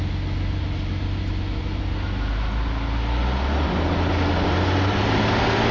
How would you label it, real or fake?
real